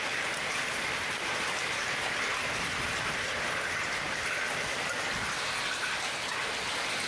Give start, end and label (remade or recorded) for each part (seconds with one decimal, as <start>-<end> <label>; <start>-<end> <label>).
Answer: 0.0-7.1 recorded